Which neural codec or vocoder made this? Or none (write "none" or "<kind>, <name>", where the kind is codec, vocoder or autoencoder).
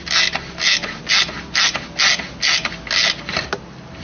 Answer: none